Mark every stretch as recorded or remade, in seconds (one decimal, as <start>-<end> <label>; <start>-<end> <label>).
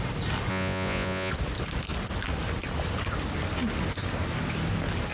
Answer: 0.0-0.5 recorded; 0.5-1.3 remade; 1.3-5.1 recorded